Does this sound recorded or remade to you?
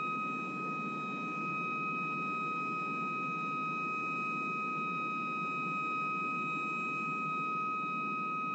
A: recorded